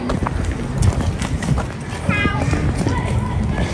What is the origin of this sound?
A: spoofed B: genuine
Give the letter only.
B